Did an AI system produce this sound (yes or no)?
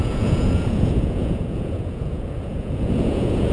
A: yes